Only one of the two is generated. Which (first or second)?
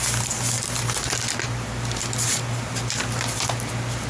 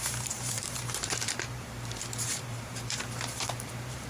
second